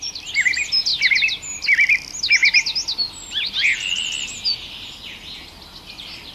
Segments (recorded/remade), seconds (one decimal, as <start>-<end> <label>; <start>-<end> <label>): 0.0-6.3 recorded